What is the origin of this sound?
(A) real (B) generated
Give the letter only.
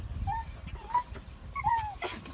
A